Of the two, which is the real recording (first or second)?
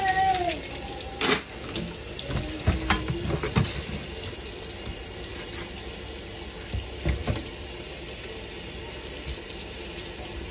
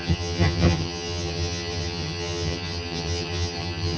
first